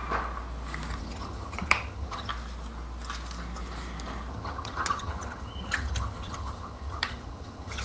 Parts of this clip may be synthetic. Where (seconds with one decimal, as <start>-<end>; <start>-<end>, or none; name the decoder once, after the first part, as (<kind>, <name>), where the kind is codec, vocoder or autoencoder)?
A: 1.0-2.3 (vocoder, HiFi-GAN); 4.3-7.8

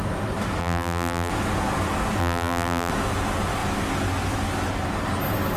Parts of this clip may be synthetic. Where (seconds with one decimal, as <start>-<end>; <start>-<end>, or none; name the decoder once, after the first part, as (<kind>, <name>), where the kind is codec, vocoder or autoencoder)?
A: 0.6-1.3 (vocoder, BigVGAN v2); 2.2-2.9

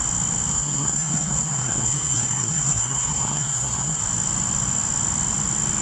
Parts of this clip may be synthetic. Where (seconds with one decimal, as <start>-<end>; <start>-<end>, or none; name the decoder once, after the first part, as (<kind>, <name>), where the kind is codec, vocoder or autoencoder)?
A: 0.5-4.0 (codec, SNAC)

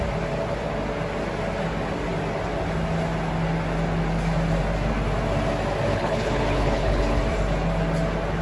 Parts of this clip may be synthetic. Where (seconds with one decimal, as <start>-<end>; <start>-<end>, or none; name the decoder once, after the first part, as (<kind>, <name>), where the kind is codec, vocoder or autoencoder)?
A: 5.9-7.0 (codec, HILCodec)